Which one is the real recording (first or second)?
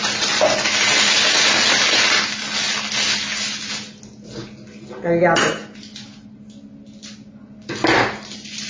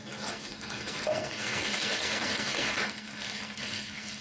first